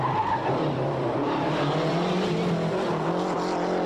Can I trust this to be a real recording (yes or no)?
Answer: no